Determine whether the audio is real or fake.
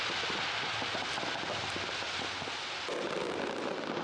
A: real